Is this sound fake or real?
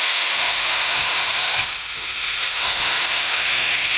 fake